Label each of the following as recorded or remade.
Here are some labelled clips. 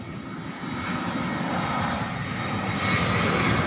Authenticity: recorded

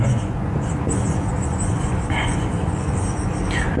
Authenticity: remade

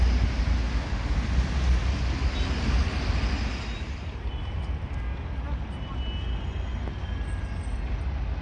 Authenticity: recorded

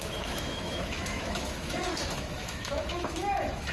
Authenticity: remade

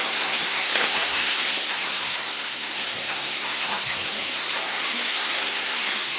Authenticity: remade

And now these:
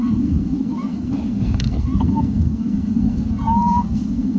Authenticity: remade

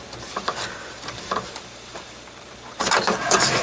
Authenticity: remade